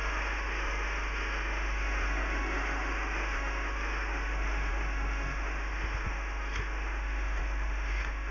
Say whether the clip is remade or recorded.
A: remade